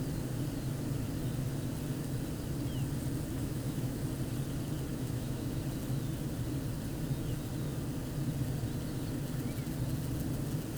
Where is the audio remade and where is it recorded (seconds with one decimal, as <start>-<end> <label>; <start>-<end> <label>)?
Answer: 0.0-3.4 recorded; 3.4-4.0 remade; 4.0-4.9 recorded; 4.9-5.6 remade; 5.6-10.8 recorded